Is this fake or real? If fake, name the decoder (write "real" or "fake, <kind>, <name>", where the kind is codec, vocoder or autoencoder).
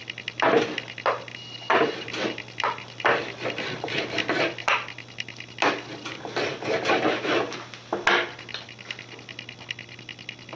real